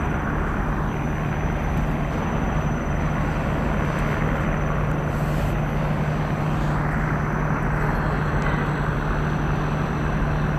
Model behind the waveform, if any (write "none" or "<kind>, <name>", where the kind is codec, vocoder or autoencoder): none